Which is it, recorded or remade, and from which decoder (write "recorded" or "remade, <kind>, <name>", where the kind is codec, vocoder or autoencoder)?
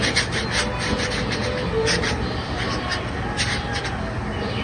recorded